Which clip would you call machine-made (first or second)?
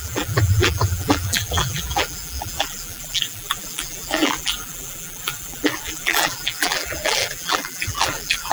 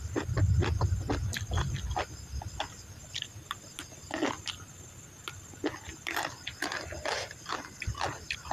first